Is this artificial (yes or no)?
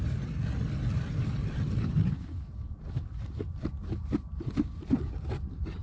no